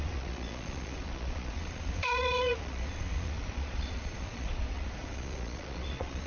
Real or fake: fake